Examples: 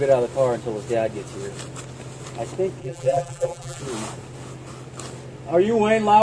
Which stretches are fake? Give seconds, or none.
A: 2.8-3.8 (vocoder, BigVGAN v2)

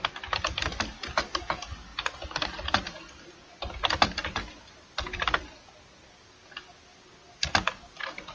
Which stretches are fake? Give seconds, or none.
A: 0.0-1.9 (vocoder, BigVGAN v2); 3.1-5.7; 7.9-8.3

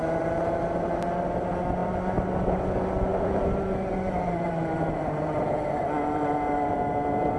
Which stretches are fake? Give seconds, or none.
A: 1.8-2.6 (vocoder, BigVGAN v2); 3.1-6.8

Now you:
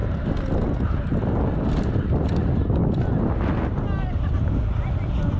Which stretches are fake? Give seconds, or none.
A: none

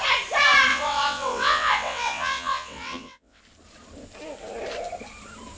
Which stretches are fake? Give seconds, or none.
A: 0.7-3.4 (vocoder, WaveNeXt)